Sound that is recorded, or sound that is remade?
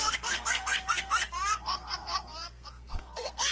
remade